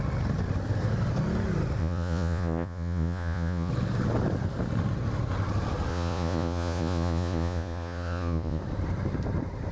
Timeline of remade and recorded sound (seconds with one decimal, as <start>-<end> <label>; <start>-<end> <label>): 0.0-1.8 recorded; 1.8-3.7 remade; 3.7-5.9 recorded; 5.9-8.6 remade; 8.6-9.7 recorded